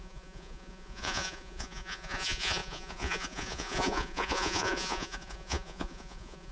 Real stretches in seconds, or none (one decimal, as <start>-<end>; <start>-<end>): none